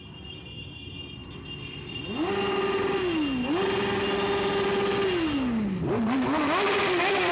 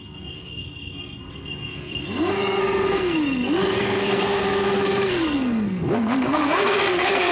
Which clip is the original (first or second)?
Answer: first